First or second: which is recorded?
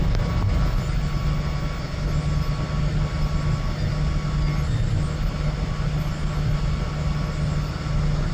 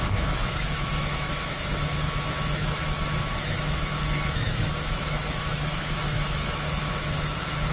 first